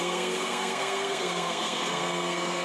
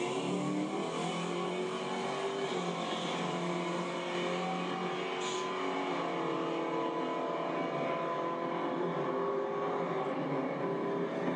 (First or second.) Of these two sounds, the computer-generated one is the first